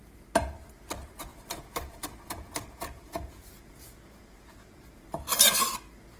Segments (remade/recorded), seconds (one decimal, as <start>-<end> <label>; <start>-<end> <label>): 0.0-1.3 recorded; 1.3-5.0 remade; 5.0-6.2 recorded